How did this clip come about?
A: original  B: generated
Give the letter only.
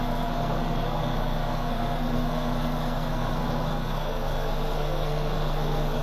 B